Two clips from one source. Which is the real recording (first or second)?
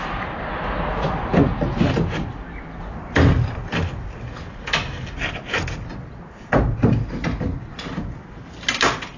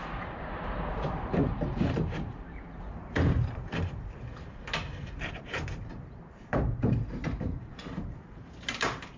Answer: first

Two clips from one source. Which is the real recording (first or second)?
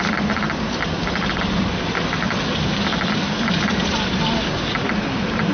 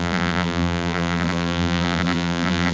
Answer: first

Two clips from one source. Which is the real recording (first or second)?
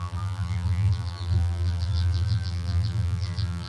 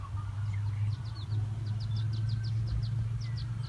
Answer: second